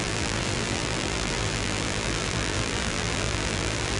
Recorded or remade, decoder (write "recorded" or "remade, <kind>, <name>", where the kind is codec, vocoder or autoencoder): remade, vocoder, BigVGAN v2